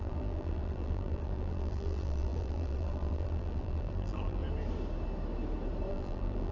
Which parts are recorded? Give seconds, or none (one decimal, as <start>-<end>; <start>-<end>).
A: 4.4-5.9